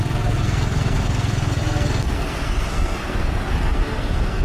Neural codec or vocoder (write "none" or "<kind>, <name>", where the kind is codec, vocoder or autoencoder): codec, SNAC